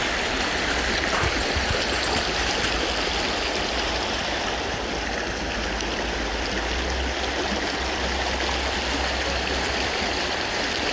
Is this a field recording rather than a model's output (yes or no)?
yes